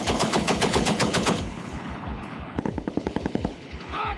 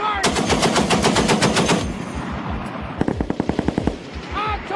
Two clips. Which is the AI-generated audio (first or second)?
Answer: first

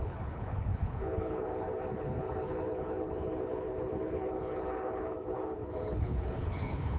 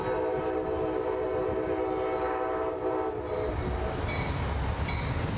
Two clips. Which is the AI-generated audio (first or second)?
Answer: first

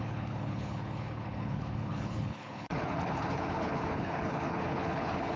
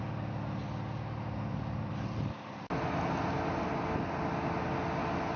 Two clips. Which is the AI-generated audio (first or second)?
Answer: first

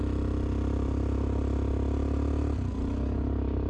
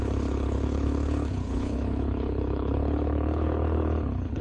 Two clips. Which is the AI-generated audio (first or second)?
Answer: second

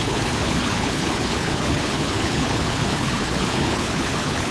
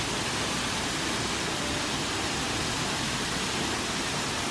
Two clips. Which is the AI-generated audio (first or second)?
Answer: first